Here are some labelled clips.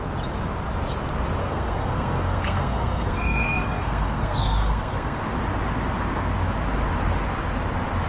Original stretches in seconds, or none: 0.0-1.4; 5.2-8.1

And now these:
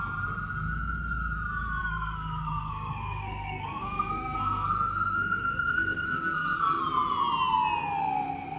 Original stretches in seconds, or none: 0.0-1.8; 6.8-8.6

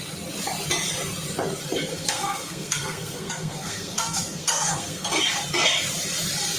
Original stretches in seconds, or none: 0.0-1.9; 5.2-6.6

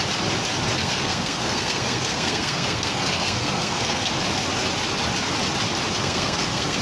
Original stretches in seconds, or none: 0.0-0.8; 4.1-6.0

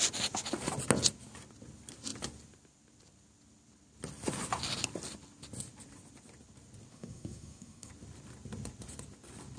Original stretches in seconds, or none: 0.0-6.9; 7.9-9.6